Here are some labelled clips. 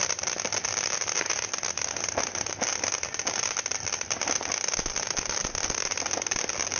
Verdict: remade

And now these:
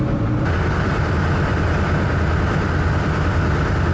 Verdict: recorded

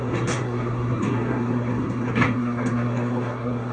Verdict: remade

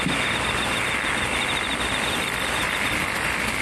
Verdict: recorded